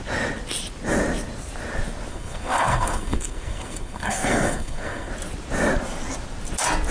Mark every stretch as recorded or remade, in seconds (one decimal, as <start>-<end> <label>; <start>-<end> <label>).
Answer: 0.0-2.1 recorded; 2.1-5.1 remade; 5.1-6.9 recorded